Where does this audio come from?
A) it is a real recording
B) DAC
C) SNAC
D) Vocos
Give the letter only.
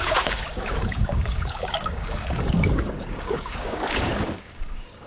B